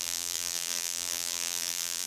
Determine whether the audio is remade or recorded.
remade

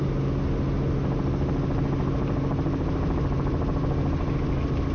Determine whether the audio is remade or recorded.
recorded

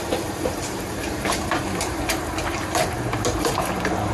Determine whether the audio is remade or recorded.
remade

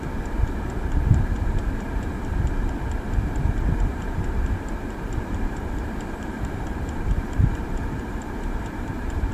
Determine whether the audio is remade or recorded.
remade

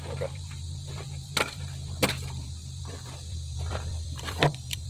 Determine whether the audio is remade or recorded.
remade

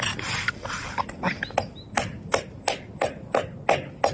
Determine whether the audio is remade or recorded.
recorded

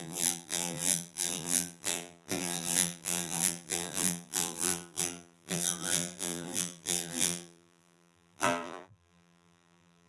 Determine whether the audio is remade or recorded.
remade